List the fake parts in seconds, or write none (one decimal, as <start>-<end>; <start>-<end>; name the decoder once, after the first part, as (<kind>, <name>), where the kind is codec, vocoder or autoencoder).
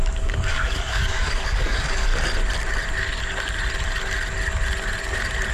0.0-2.1 (codec, DAC)